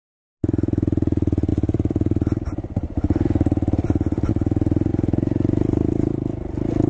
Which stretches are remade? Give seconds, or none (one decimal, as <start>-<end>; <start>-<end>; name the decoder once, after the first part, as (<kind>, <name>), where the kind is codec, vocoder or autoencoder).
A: 0.0-4.9 (vocoder, BigVGAN v2)